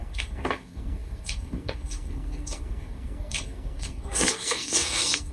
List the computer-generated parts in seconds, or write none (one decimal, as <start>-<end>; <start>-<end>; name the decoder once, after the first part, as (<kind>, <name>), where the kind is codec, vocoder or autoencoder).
0.0-5.3 (codec, SNAC)